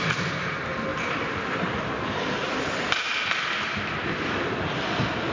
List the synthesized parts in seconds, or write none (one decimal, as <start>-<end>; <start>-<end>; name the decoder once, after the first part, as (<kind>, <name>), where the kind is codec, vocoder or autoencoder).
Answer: 0.9-2.8 (vocoder, BigVGAN v2)